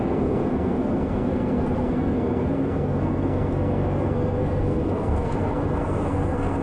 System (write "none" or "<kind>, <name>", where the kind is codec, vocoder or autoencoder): codec, SNAC